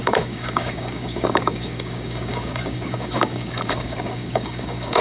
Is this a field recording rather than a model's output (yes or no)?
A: no